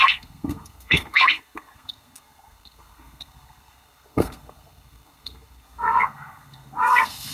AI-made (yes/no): yes